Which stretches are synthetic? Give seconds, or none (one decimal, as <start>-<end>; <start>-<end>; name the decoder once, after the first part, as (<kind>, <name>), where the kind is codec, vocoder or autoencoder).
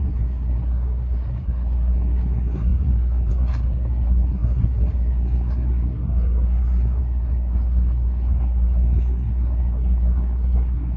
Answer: 0.0-11.0 (codec, SNAC)